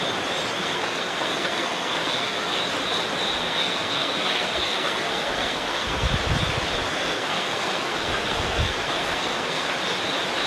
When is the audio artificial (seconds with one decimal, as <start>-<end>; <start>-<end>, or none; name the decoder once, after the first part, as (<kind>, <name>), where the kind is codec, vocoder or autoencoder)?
0.6-2.6 (codec, SNAC); 3.4-6.1; 6.9-9.7